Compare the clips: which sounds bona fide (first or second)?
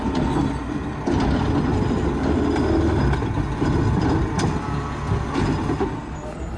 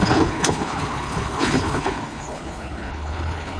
first